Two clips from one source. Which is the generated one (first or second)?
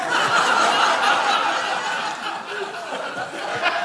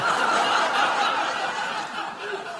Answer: second